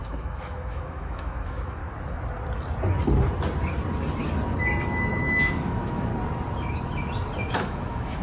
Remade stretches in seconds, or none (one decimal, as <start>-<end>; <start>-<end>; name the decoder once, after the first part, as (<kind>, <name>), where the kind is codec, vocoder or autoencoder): 0.0-1.8 (autoencoder, DAC-VAE); 5.1-6.1; 7.5-8.2